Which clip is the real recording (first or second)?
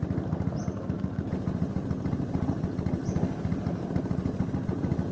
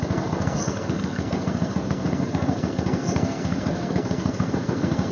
first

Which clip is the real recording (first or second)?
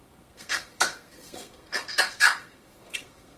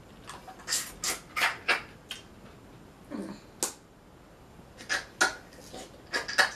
second